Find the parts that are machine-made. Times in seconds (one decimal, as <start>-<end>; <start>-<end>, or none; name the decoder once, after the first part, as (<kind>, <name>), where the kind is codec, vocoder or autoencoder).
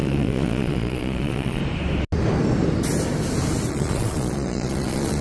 0.0-1.6 (vocoder, Vocos); 3.7-5.2